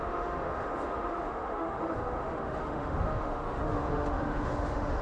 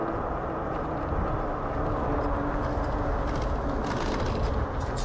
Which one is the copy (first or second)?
first